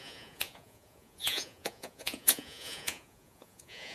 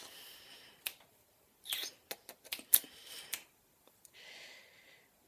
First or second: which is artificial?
first